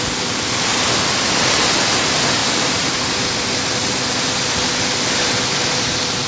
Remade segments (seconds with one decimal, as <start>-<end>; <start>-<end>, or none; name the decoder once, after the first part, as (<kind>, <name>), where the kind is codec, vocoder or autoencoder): 2.4-3.1 (vocoder, BigVGAN v2)